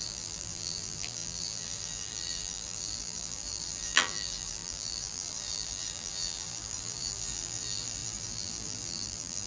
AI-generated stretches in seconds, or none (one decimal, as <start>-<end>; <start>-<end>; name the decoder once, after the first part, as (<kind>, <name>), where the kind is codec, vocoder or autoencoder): 0.0-9.5 (vocoder, BigVGAN v2)